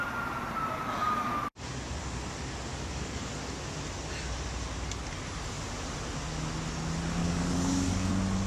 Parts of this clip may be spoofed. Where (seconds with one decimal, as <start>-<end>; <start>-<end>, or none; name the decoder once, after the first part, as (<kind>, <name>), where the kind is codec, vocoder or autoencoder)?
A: 2.7-3.3 (codec, DAC); 7.2-8.1